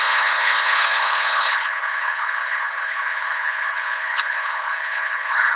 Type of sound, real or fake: fake